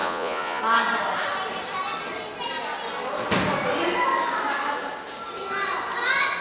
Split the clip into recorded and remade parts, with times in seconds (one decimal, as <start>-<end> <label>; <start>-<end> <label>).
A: 0.0-0.6 remade; 0.6-6.4 recorded